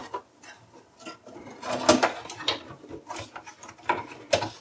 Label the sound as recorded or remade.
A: recorded